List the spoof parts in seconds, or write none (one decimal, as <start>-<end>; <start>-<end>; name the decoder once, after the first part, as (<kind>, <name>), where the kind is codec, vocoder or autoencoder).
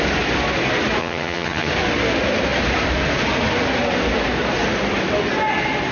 1.0-1.7 (vocoder, HiFi-GAN)